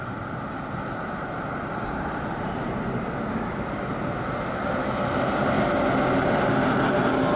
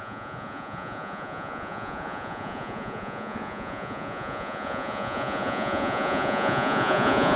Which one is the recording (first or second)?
first